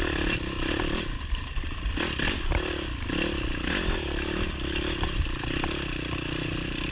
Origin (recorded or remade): recorded